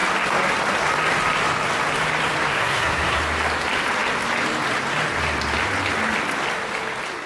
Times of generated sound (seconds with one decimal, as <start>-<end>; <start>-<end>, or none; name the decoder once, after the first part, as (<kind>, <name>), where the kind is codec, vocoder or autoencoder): 2.5-3.2 (codec, SNAC)